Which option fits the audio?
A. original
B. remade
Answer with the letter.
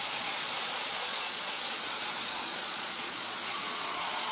B